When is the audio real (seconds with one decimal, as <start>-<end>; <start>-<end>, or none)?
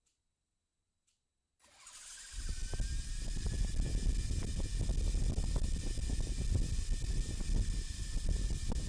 0.0-8.9